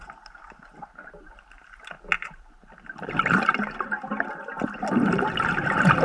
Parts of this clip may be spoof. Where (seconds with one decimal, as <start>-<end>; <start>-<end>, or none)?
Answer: none